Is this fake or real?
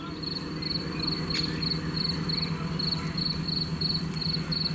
real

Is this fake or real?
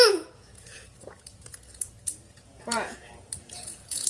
fake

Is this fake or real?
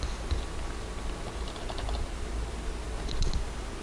fake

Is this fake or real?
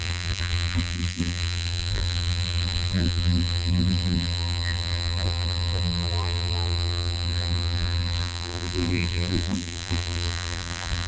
fake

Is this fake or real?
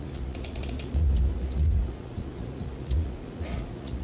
fake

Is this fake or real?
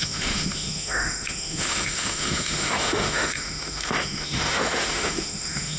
fake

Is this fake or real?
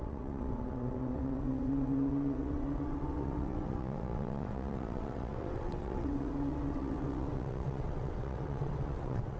fake